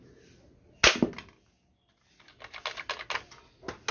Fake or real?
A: real